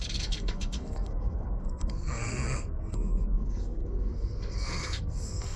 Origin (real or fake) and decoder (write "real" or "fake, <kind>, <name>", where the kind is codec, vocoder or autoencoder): fake, codec, SNAC